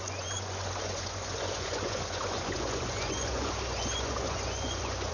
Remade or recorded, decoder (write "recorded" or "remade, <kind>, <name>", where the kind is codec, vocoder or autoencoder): remade, vocoder, Vocos